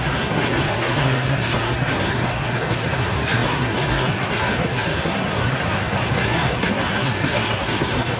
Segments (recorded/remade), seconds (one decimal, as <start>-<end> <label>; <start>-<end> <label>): 0.0-8.2 remade